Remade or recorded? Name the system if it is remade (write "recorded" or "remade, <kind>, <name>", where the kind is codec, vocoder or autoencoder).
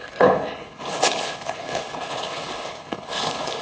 remade, codec, HILCodec